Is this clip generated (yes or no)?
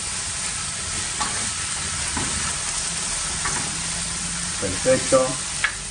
no